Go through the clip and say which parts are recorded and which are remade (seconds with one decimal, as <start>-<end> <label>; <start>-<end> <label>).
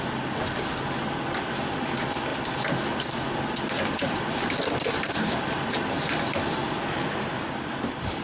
0.0-8.2 recorded